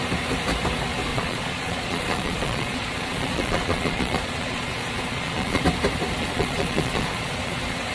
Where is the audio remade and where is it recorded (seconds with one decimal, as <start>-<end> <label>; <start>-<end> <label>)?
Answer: 0.0-1.1 recorded; 1.1-5.6 remade; 5.6-6.2 recorded; 6.2-7.9 remade